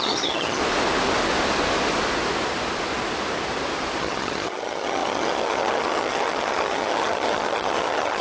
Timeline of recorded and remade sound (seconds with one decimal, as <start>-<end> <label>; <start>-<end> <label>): 0.0-0.6 remade; 0.6-4.0 recorded; 4.0-8.2 remade